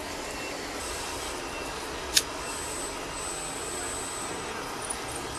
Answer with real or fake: real